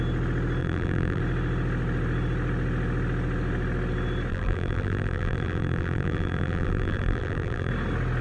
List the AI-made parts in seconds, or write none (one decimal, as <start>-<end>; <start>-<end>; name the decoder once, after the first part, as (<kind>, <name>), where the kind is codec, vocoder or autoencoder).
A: 0.6-1.2 (vocoder, BigVGAN v2); 4.3-7.7

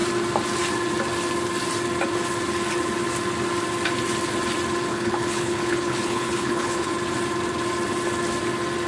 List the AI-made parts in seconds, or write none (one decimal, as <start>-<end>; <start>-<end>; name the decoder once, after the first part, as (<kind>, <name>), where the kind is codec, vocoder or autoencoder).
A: 4.9-6.9 (codec, HILCodec)

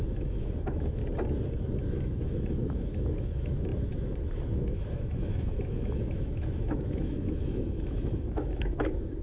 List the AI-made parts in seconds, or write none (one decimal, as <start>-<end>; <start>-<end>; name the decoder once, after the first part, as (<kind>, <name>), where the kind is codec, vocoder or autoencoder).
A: 0.0-1.0 (autoencoder, DAC-VAE); 1.9-9.2

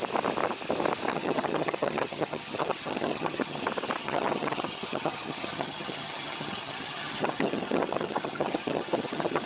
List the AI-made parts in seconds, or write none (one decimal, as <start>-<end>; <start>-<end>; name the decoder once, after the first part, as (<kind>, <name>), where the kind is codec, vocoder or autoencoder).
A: 1.1-3.6 (vocoder, HiFi-GAN); 4.0-9.4

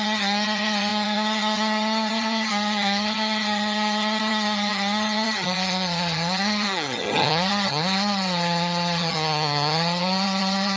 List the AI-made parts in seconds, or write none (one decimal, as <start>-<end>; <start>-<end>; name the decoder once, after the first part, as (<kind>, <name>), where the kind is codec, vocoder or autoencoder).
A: 0.0-10.8 (vocoder, HiFi-GAN)

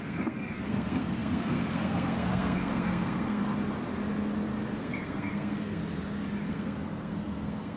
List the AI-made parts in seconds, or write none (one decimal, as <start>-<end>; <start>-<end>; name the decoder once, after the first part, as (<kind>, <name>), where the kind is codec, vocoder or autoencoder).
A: 0.0-3.4 (codec, SNAC); 4.8-5.8; 6.5-7.8

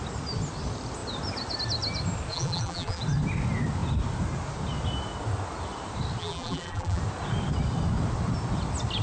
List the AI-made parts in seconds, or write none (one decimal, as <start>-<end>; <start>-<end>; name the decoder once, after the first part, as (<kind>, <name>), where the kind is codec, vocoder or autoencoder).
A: 2.3-3.0 (vocoder, BigVGAN v2); 6.2-7.0